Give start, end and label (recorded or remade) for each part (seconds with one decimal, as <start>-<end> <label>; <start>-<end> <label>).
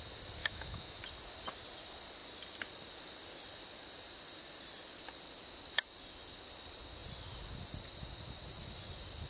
0.0-0.4 recorded; 0.4-1.0 remade; 1.0-9.3 recorded